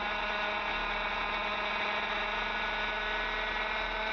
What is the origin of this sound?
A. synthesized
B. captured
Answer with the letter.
B